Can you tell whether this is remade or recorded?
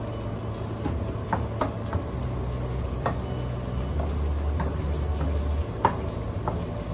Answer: recorded